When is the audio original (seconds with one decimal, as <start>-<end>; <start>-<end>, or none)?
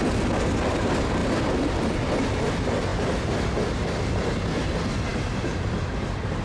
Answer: 0.0-6.4